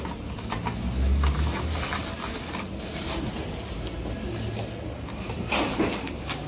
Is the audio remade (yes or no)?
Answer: no